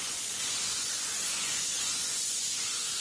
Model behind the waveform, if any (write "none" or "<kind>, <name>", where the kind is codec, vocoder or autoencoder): vocoder, Vocos